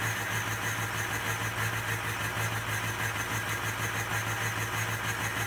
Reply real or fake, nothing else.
real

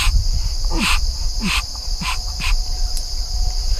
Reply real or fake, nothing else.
fake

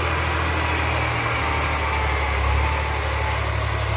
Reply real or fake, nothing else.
real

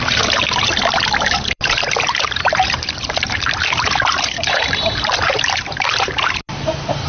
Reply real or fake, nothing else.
fake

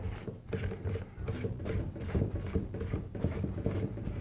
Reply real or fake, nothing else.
real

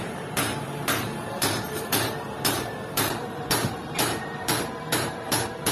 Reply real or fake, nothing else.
fake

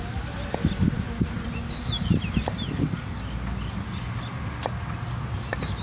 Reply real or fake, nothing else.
fake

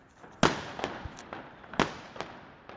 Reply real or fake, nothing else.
real